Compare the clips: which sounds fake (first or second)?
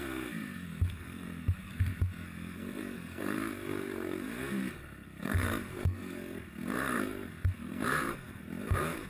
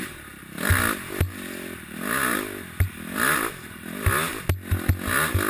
first